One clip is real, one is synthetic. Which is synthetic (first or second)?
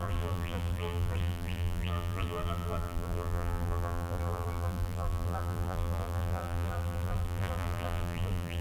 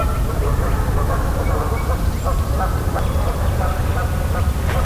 first